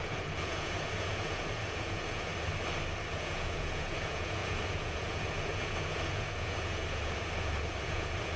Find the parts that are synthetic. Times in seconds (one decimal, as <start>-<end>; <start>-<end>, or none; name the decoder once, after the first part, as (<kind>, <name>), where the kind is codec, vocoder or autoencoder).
0.0-2.3 (vocoder, Vocos); 3.1-8.4